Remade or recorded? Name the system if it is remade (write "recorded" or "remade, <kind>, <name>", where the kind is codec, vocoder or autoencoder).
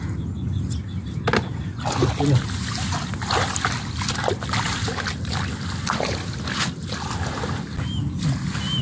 recorded